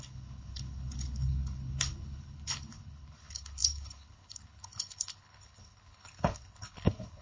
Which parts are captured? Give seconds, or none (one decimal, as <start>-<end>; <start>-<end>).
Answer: none